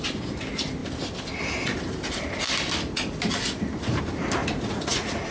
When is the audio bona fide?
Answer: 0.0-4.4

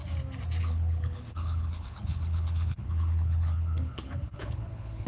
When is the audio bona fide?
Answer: 0.0-0.6